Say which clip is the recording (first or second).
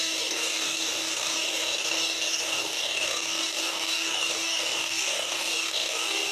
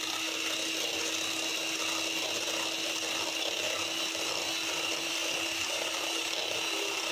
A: second